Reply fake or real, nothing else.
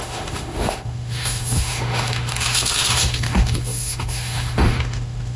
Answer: fake